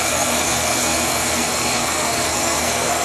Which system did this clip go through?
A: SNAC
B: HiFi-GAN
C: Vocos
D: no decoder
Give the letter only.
A